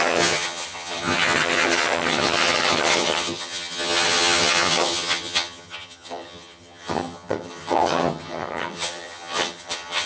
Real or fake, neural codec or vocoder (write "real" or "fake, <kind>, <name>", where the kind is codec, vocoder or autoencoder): fake, vocoder, HiFi-GAN